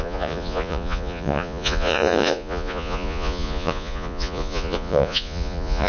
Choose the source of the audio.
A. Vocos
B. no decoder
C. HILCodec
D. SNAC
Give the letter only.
A